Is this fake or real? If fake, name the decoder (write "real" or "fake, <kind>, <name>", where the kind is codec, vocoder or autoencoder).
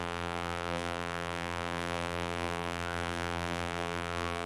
fake, vocoder, BigVGAN v2